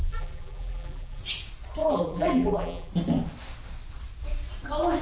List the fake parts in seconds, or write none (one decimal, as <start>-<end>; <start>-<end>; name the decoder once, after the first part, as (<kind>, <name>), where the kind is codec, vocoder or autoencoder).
0.0-1.2 (vocoder, BigVGAN v2); 1.8-2.9

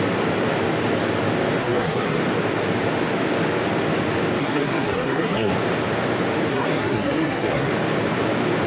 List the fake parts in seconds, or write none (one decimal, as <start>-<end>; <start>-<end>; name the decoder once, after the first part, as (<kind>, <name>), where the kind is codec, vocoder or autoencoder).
1.6-2.2 (codec, SNAC); 4.4-5.5; 6.5-7.7